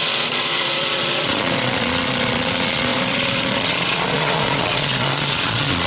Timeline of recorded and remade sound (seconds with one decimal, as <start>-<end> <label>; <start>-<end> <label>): 0.0-5.9 remade